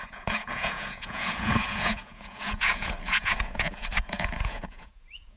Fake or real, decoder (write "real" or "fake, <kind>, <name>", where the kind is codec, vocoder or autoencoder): fake, vocoder, Vocos